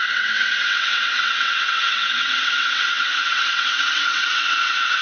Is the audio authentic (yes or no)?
no